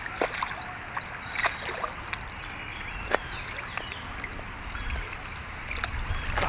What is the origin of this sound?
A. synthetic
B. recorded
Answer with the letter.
A